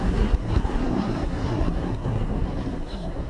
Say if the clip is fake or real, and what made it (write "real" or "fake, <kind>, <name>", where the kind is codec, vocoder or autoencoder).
fake, codec, SNAC